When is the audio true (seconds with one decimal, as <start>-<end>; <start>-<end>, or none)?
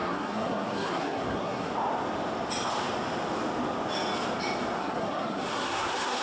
1.7-4.8